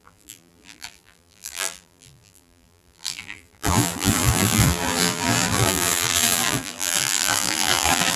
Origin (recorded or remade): remade